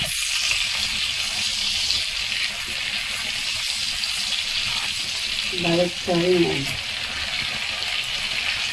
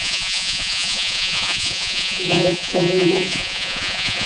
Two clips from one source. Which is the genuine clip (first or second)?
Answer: first